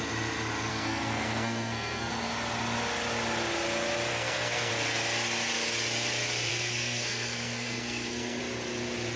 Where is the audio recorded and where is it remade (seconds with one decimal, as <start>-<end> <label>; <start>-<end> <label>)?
0.0-0.7 recorded; 0.7-2.1 remade; 2.1-4.1 recorded; 4.1-4.7 remade; 4.7-6.5 recorded; 6.5-8.4 remade; 8.4-9.2 recorded